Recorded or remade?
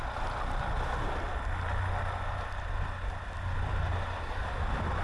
recorded